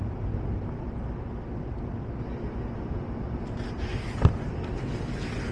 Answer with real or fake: real